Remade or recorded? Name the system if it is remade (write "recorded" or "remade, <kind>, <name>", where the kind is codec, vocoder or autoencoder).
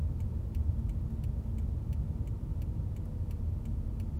recorded